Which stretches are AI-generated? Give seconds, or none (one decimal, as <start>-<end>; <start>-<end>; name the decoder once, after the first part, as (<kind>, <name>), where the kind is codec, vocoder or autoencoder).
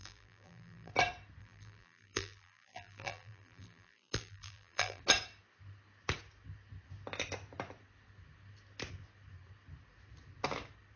0.0-0.9 (vocoder, BigVGAN v2); 1.4-5.0